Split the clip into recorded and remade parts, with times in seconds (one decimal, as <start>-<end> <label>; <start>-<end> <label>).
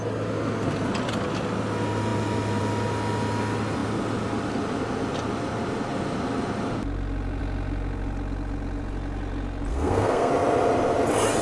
0.0-9.7 recorded; 9.7-10.3 remade; 10.3-11.4 recorded